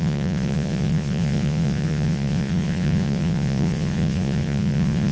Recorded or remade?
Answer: remade